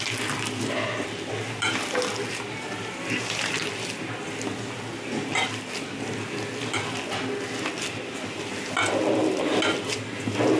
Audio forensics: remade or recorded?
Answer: recorded